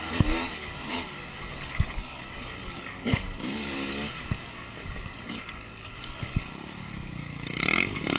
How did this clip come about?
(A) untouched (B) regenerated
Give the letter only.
B